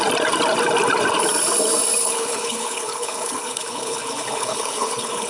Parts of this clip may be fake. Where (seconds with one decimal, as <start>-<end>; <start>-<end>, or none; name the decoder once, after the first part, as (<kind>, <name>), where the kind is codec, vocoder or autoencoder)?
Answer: 2.0-5.3 (codec, HILCodec)